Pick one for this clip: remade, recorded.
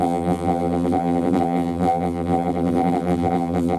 remade